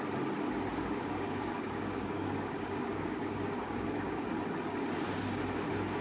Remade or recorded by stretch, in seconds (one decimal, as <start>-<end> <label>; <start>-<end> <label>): 0.0-0.7 recorded; 0.7-4.3 remade; 4.3-6.0 recorded